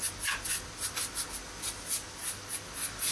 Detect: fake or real real